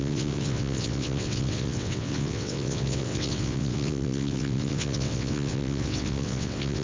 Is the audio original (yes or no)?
no